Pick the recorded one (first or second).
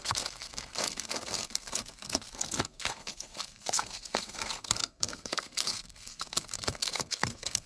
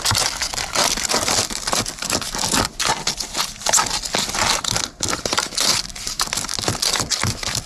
second